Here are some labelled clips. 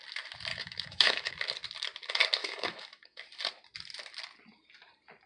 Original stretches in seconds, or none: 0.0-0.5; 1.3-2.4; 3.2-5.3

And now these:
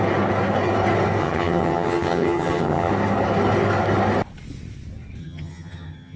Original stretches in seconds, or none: 0.0-1.2; 2.9-5.2

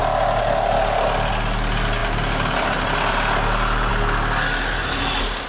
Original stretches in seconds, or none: 0.0-5.5

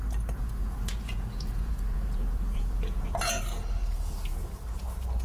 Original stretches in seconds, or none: 0.0-0.4; 3.4-5.2

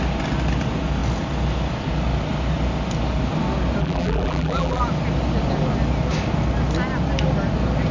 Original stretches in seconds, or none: 0.0-3.8; 4.8-7.9